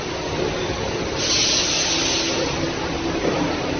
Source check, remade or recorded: recorded